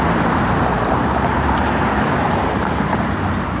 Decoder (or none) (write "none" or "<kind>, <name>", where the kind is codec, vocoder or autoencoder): vocoder, BigVGAN v2